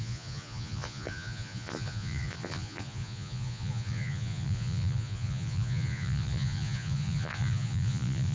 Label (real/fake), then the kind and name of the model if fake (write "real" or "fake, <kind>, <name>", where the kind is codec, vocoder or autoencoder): fake, vocoder, Vocos